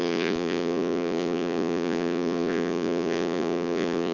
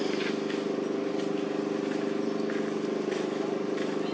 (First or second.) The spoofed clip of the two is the first